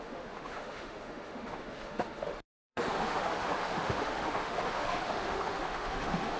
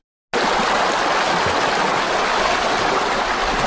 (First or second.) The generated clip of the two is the first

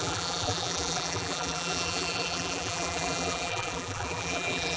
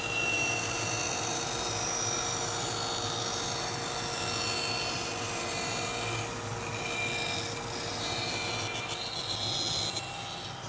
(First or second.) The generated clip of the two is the first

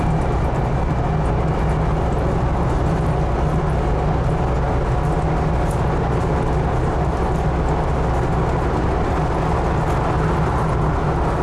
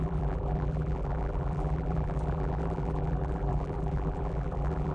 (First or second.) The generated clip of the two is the second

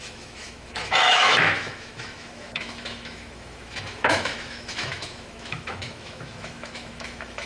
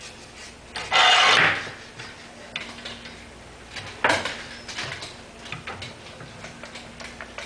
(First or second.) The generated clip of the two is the first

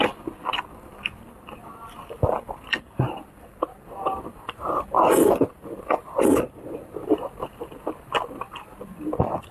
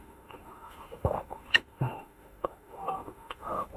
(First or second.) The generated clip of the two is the second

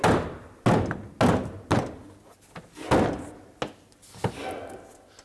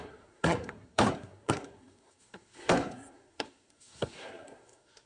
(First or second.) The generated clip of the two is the second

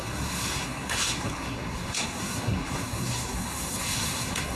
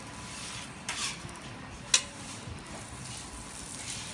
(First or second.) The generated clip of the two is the first